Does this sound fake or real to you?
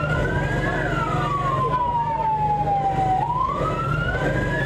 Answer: real